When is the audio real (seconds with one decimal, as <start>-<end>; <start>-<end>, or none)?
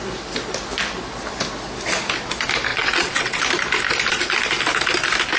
0.0-2.7; 3.4-5.4